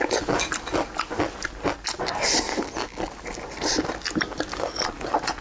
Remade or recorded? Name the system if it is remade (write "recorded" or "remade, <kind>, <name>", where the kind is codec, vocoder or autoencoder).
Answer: recorded